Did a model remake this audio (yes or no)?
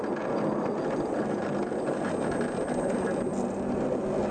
no